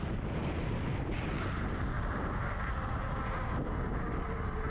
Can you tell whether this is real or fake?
real